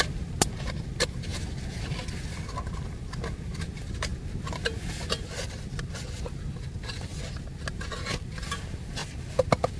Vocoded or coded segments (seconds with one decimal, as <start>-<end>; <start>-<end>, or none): none